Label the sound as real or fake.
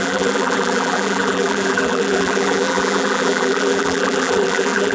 fake